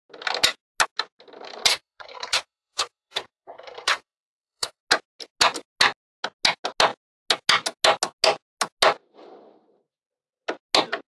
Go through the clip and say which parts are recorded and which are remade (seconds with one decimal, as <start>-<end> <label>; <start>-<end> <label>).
0.0-1.7 recorded; 1.7-4.8 remade; 4.8-11.1 recorded